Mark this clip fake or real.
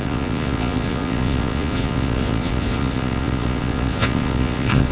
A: fake